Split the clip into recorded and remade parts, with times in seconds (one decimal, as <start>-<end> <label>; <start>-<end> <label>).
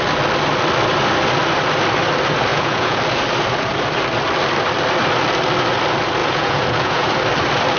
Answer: 0.0-2.5 recorded; 2.5-3.0 remade; 3.0-6.2 recorded; 6.2-7.1 remade; 7.1-7.8 recorded